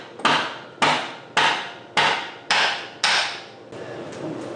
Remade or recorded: recorded